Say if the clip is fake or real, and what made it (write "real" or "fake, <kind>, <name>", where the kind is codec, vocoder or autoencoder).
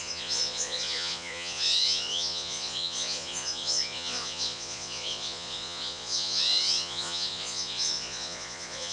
fake, vocoder, Vocos